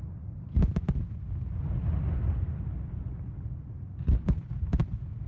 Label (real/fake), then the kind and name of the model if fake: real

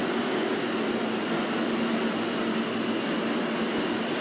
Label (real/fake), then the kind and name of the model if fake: real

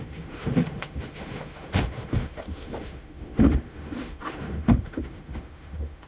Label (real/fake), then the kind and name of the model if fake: fake, autoencoder, DAC-VAE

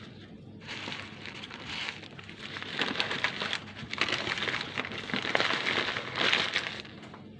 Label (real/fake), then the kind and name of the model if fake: real